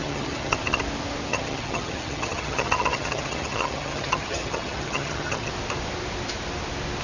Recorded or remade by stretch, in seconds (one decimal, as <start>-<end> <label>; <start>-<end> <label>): 0.0-0.8 remade; 0.8-1.3 recorded; 1.3-5.5 remade; 5.5-7.0 recorded